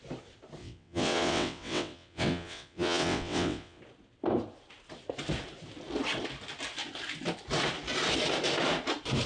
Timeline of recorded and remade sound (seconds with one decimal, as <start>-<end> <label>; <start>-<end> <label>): 0.0-0.6 recorded; 0.6-3.8 remade; 3.8-9.3 recorded